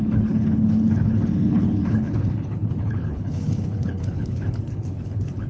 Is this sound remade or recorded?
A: remade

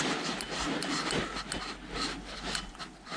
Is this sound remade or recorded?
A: recorded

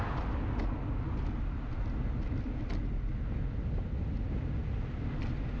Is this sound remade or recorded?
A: recorded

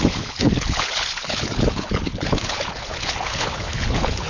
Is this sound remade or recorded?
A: remade